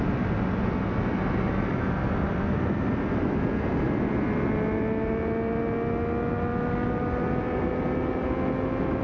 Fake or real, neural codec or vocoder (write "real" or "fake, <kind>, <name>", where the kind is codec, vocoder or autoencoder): real